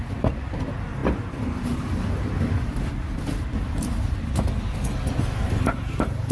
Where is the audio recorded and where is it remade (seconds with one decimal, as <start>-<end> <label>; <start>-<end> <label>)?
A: 0.0-6.3 recorded